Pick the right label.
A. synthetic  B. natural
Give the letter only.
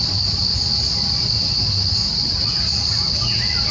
B